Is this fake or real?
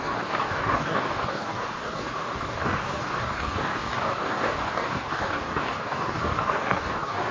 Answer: fake